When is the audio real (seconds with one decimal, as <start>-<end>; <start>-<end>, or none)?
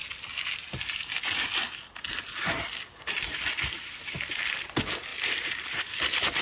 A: 0.0-3.7; 5.1-6.0